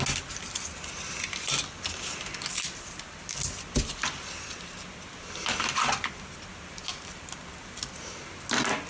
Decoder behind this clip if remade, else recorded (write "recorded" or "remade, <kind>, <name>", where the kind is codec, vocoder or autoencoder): recorded